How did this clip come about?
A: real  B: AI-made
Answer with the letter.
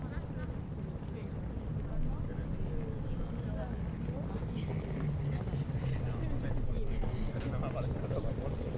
A